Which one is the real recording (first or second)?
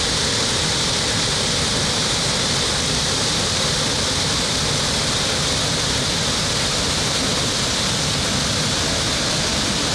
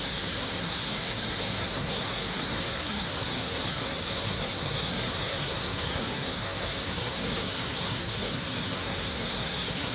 first